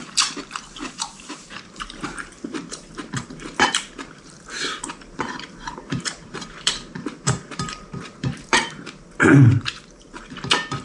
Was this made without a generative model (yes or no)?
no